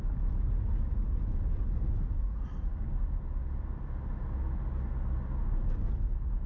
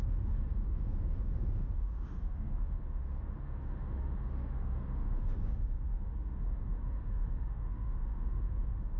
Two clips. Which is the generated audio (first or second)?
second